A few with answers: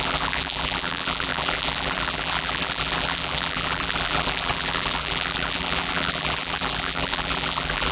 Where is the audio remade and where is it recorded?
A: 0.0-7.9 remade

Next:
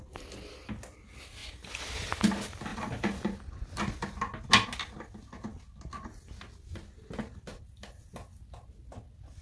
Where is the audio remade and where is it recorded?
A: 0.0-1.4 recorded; 1.4-2.1 remade; 2.1-2.7 recorded; 2.7-3.8 remade; 3.8-9.4 recorded

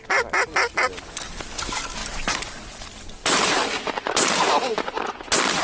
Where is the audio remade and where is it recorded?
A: 0.0-2.0 recorded; 2.0-2.8 remade; 2.8-3.2 recorded; 3.2-4.1 remade; 4.1-5.6 recorded

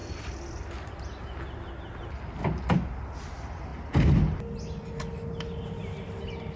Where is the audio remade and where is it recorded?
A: 0.0-0.7 remade; 0.7-6.6 recorded

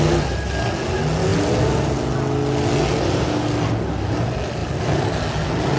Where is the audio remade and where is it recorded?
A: 0.0-5.8 recorded

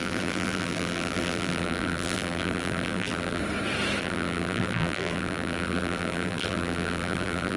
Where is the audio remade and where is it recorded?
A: 0.0-3.4 remade; 3.4-4.0 recorded; 4.0-7.6 remade

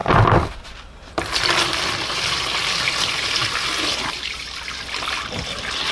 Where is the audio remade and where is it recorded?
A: 0.0-1.9 remade; 1.9-5.9 recorded

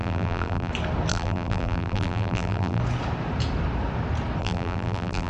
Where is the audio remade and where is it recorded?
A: 0.0-0.7 remade; 0.7-1.1 recorded; 1.1-2.8 remade; 2.8-4.4 recorded; 4.4-5.3 remade